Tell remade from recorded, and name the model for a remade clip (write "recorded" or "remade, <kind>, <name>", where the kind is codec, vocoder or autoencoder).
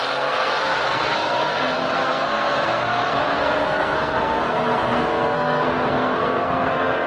remade, codec, SNAC